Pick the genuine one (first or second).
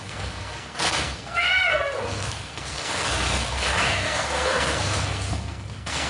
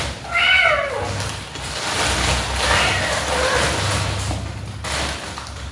second